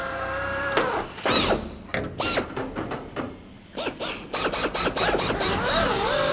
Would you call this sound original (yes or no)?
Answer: yes